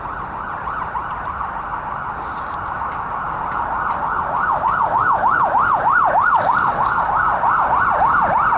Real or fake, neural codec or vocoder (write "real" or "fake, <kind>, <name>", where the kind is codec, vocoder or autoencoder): real